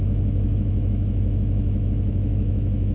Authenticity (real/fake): fake